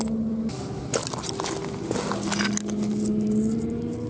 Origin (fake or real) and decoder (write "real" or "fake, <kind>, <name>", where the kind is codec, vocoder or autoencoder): real